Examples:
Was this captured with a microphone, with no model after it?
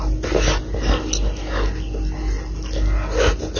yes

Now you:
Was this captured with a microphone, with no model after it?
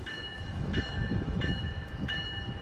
no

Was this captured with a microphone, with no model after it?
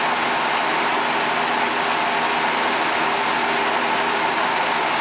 yes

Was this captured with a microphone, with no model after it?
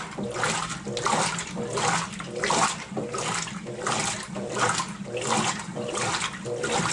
yes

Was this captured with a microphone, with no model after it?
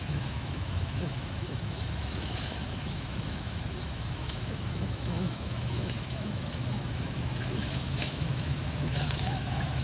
no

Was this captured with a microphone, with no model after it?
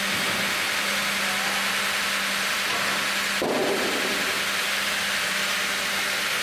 yes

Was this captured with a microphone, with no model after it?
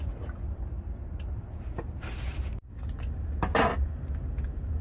yes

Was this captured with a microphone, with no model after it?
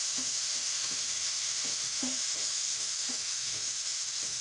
no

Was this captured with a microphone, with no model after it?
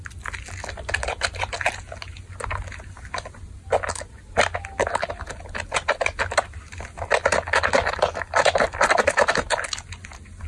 yes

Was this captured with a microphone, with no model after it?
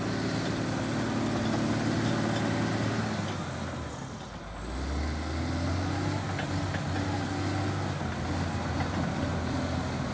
yes